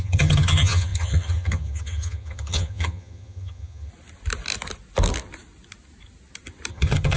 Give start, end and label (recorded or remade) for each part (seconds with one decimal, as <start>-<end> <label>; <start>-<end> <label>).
0.0-3.9 remade; 3.9-6.7 recorded; 6.7-7.2 remade